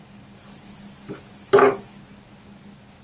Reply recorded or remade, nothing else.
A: recorded